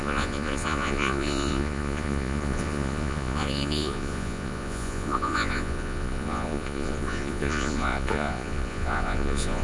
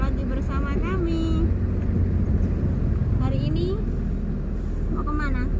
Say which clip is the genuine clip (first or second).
second